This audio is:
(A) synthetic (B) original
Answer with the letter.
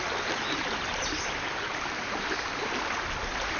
B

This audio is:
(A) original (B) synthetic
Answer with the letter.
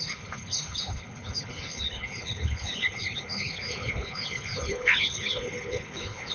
B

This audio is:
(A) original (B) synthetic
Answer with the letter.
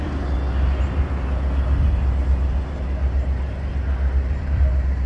A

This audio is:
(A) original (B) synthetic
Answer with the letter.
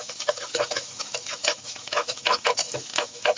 B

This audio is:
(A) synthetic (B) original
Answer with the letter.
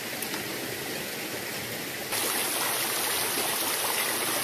B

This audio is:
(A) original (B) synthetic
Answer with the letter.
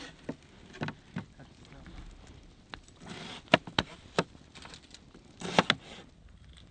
A